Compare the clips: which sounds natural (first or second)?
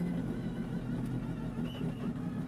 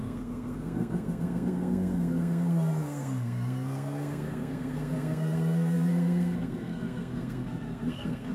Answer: first